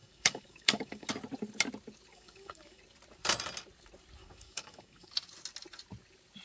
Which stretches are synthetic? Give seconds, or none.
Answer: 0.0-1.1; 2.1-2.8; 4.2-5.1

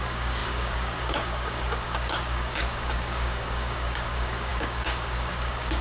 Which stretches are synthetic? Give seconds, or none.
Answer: 0.0-5.8